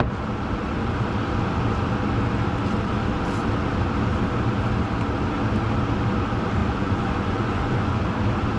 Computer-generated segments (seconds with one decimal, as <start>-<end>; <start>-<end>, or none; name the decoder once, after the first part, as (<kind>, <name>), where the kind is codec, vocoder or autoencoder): 6.6-8.0 (vocoder, Vocos)